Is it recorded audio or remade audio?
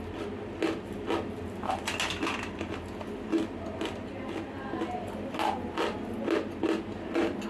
recorded